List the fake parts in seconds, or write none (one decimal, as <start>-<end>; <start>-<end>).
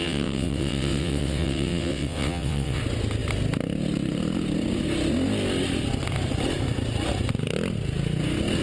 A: 0.0-2.8